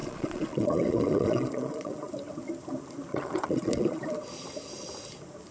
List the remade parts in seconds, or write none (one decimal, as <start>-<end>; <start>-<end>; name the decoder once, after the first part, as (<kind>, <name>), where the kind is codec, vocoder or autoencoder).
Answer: 0.0-2.1 (vocoder, Vocos); 3.1-4.1